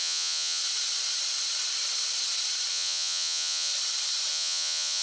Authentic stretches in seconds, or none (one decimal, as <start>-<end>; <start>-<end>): 0.6-2.7; 3.7-4.3